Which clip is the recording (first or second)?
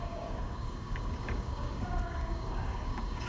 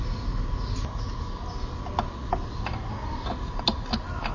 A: second